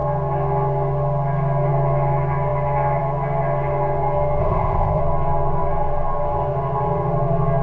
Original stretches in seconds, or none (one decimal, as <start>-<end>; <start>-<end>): 0.0-4.4; 5.0-7.6